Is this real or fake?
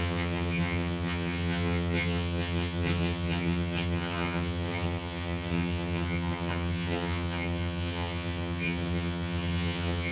fake